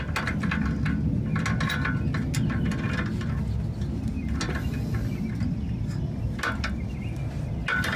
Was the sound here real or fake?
real